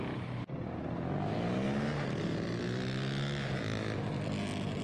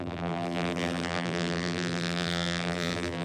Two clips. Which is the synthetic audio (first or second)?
second